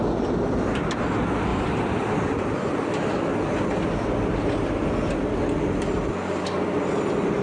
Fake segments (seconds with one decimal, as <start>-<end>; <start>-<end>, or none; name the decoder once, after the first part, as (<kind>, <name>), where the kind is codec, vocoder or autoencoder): 1.5-2.9 (vocoder, BigVGAN v2)